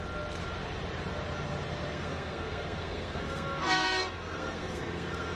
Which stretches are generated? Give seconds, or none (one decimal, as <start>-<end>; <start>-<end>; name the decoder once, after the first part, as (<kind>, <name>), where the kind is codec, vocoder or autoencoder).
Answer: 1.9-5.4 (codec, SNAC)